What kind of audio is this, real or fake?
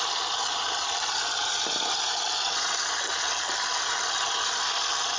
real